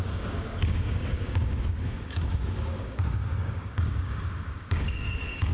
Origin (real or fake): fake